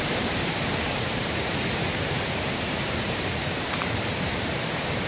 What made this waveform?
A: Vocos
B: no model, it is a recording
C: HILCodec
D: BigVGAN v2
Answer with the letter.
D